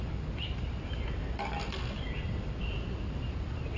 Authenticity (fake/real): real